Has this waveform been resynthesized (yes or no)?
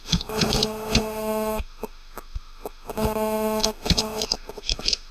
yes